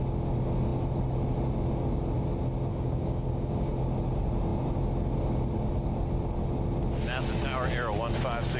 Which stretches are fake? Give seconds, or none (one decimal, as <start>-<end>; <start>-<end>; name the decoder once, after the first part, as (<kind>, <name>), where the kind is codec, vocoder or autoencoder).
2.7-3.7 (codec, DAC)